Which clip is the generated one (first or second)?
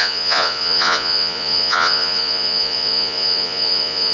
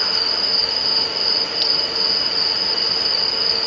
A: first